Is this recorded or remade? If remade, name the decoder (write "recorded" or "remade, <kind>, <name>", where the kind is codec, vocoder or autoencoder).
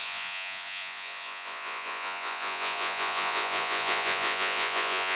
remade, vocoder, Vocos